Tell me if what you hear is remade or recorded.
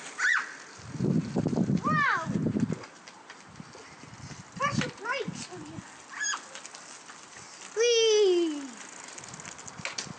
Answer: recorded